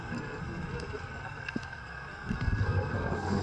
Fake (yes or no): yes